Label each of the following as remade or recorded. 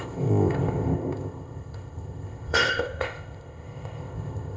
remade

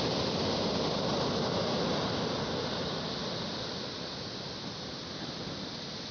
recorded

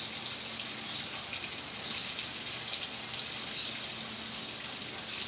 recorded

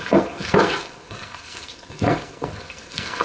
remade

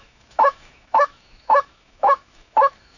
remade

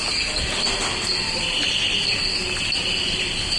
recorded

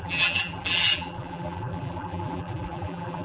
remade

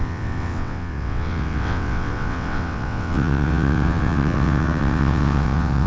remade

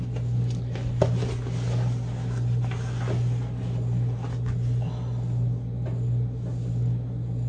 recorded